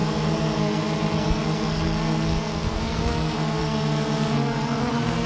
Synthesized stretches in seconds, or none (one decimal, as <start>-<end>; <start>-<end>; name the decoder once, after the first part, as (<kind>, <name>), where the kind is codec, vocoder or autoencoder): 0.0-5.3 (codec, SNAC)